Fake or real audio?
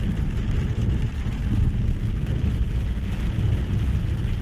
real